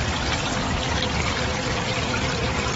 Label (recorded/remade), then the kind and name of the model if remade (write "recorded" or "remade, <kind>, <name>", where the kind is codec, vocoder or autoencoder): remade, vocoder, BigVGAN v2